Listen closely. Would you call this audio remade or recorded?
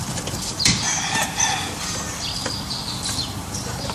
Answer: remade